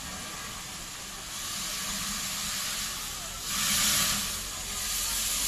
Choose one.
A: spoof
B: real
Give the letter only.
B